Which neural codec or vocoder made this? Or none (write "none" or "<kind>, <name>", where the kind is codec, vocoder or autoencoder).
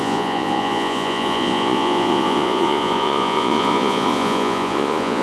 vocoder, Vocos